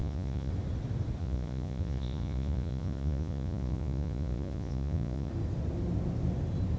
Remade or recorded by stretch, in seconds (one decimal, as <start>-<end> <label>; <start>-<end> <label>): 0.0-0.5 remade; 0.5-1.2 recorded; 1.2-5.3 remade; 5.3-6.8 recorded